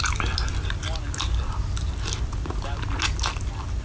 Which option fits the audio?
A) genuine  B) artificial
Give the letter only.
A